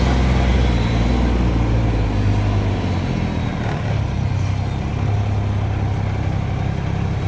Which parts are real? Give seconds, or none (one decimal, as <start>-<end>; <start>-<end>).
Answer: 0.0-0.5; 1.1-7.3